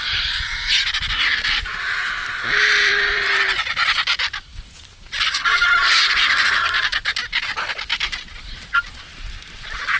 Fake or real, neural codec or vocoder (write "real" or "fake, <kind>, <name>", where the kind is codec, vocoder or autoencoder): real